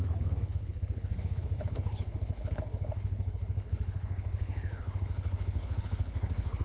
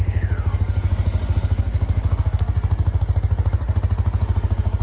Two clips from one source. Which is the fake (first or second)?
first